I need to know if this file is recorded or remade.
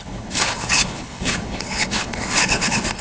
remade